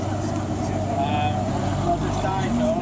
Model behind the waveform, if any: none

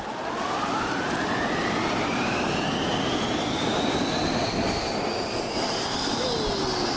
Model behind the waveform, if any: none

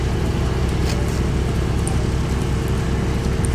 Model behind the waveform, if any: none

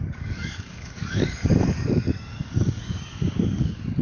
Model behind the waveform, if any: codec, DAC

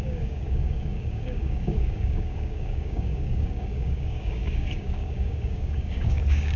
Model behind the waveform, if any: codec, DAC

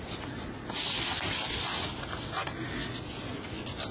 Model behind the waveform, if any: none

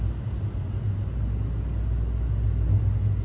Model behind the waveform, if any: none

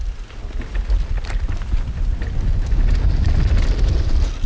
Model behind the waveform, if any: none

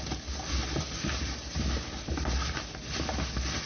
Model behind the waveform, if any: none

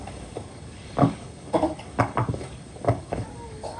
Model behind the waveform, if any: codec, DAC